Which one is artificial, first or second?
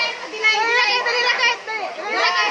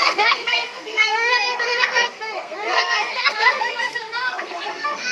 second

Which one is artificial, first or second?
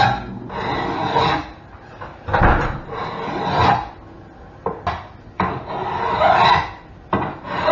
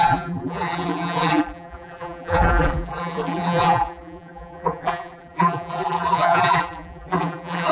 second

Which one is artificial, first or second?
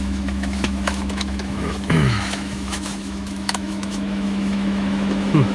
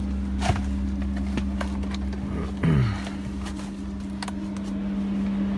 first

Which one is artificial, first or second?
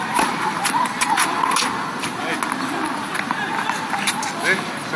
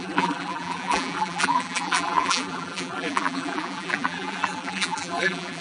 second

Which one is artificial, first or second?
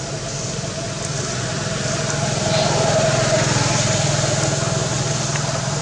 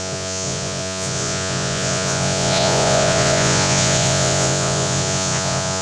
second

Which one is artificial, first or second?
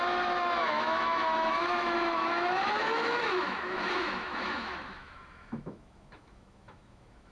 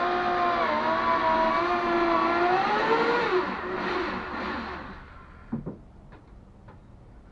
first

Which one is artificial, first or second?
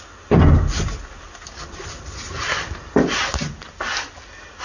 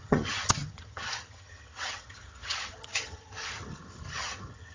second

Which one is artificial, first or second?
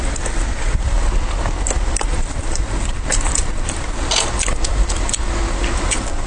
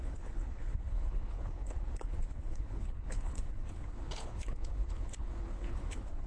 second